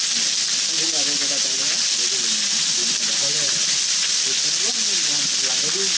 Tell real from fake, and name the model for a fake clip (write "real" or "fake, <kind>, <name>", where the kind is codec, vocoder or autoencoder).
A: real